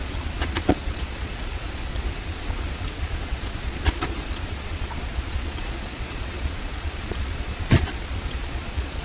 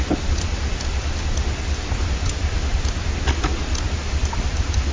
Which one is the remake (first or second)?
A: first